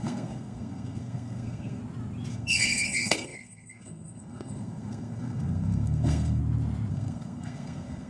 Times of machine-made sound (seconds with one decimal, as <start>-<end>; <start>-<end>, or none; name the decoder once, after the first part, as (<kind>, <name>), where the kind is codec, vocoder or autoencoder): 0.0-1.8 (codec, SNAC); 2.3-6.4; 6.9-8.1